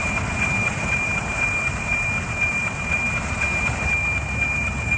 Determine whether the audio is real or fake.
fake